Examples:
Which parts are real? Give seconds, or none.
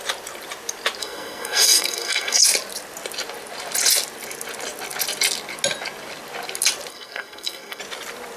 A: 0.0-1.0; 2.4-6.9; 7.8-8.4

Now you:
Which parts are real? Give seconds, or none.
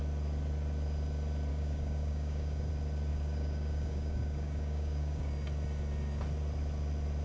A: 0.0-1.5; 2.7-3.1; 5.3-7.2